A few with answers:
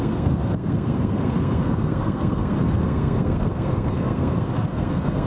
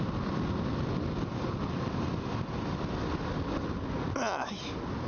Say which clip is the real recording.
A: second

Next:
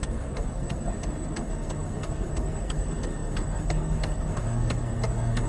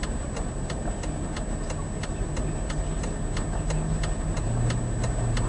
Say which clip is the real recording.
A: second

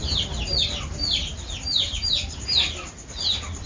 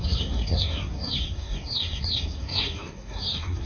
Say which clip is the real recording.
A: first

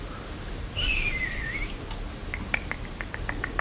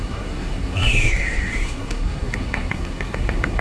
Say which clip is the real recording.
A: first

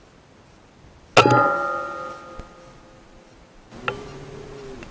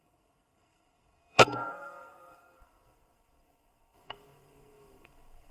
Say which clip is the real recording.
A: first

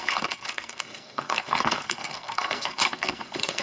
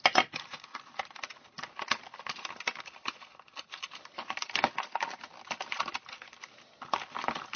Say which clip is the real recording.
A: second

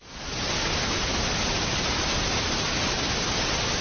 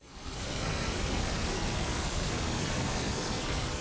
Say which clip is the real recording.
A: first